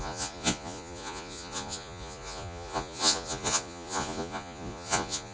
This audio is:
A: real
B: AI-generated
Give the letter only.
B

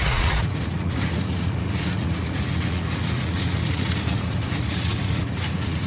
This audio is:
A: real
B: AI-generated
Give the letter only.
B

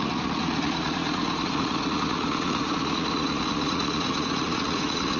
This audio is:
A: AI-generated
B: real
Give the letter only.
A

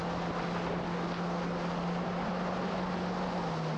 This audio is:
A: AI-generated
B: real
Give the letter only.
B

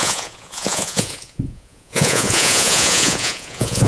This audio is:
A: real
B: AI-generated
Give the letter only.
B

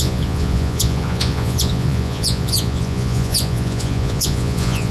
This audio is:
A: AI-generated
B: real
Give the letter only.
A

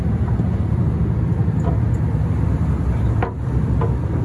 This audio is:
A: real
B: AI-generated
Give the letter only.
A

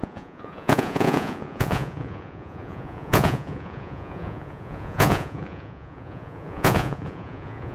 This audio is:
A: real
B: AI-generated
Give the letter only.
B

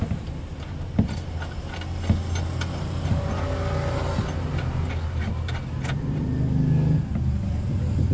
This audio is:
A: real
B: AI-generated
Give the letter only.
A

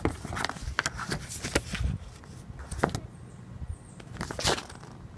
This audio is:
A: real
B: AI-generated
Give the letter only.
A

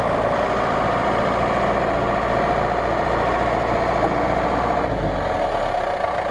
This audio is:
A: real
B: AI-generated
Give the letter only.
A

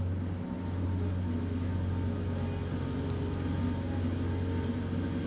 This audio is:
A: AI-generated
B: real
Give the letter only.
B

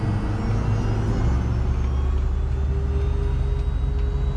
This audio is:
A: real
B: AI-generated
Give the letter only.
A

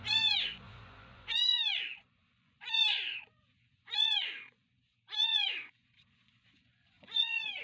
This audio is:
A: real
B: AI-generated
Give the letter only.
B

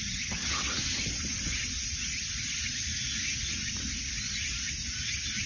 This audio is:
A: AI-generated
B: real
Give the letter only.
B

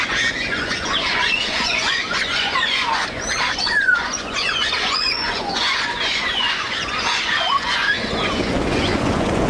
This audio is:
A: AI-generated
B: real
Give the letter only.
A